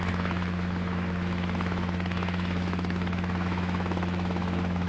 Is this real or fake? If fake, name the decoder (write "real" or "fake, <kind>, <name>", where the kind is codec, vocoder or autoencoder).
fake, autoencoder, DAC-VAE